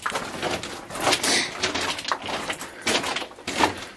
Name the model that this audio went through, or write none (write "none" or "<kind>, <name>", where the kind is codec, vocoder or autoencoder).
vocoder, BigVGAN v2